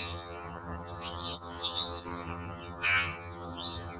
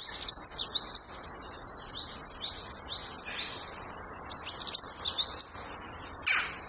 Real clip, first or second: second